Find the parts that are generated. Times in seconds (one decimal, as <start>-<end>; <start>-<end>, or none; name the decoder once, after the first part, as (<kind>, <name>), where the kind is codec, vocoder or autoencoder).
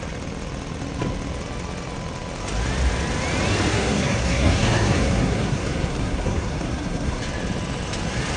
3.7-7.2 (codec, SNAC)